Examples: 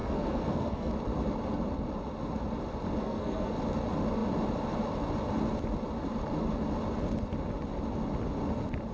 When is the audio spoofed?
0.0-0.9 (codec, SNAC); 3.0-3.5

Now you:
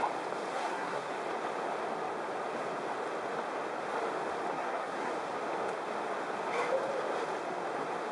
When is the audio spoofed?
0.5-1.1 (codec, SNAC); 4.5-5.1

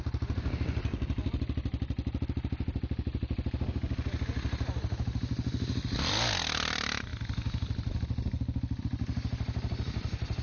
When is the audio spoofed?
none

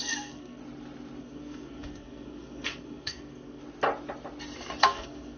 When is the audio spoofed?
0.0-0.6 (codec, SNAC); 1.2-3.6; 4.8-5.4

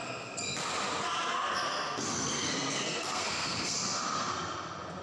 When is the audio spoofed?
1.3-4.3 (codec, SNAC)

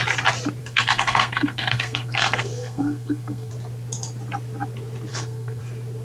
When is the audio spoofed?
0.6-3.5 (codec, SNAC); 5.1-5.6

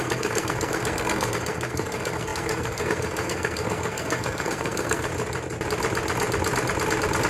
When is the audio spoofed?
0.0-5.1 (codec, SNAC)